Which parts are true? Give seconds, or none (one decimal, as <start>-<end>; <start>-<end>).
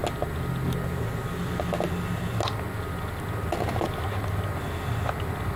0.0-5.6